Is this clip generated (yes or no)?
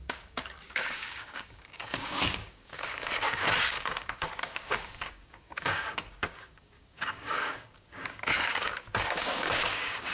yes